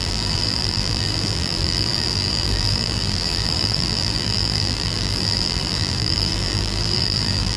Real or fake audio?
fake